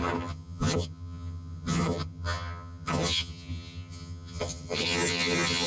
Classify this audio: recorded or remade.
remade